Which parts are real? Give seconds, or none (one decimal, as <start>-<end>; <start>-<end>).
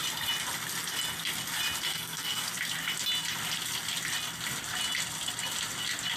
0.0-1.9; 2.5-6.2